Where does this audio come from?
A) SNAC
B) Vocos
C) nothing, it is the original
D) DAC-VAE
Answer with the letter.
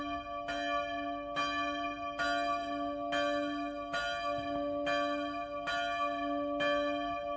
C